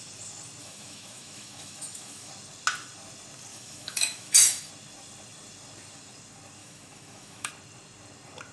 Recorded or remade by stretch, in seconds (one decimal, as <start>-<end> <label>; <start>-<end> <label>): 0.0-0.6 recorded; 0.6-2.3 remade; 2.3-3.5 recorded; 3.5-4.7 remade; 4.7-6.6 recorded; 6.6-7.5 remade; 7.5-8.5 recorded